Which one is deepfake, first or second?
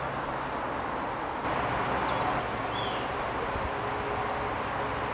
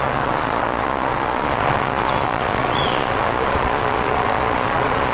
second